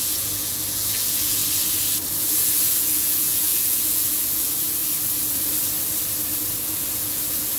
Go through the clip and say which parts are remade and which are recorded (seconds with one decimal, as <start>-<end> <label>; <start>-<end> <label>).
0.0-1.4 remade; 1.4-2.2 recorded; 2.2-4.8 remade; 4.8-6.6 recorded; 6.6-7.6 remade